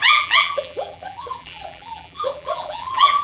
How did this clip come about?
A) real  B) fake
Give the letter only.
B